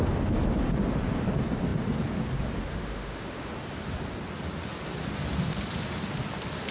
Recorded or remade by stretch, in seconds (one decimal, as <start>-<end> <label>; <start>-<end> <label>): 0.0-2.7 recorded; 2.7-3.5 remade; 3.5-6.7 recorded